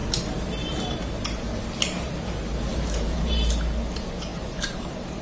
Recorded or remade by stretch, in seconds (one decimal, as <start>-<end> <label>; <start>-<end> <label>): 0.0-0.8 remade; 0.8-2.7 recorded; 2.7-3.5 remade; 3.5-4.3 recorded; 4.3-5.2 remade